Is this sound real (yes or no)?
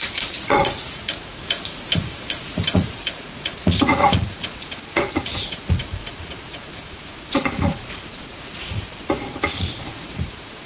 no